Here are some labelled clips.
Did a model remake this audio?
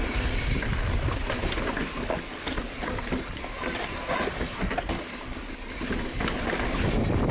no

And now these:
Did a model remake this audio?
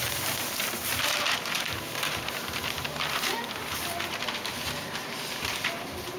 yes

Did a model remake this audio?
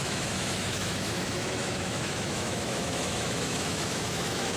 yes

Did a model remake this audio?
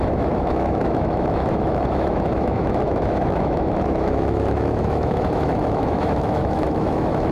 yes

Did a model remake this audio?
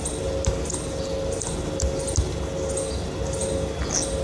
no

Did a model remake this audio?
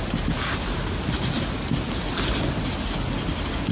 no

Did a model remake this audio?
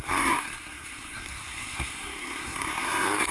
yes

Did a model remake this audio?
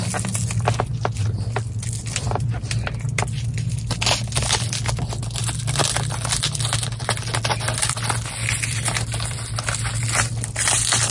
no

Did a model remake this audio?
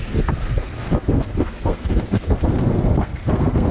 yes